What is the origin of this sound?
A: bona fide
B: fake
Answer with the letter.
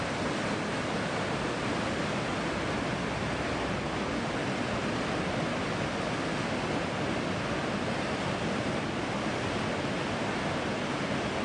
A